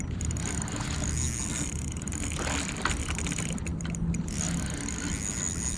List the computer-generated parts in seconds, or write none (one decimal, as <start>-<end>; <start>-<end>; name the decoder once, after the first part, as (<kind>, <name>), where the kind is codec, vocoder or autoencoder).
none